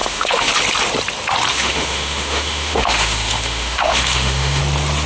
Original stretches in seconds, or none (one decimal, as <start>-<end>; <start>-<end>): 0.5-1.5; 4.6-5.1